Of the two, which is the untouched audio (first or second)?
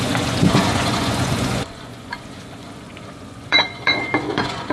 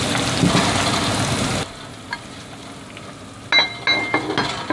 second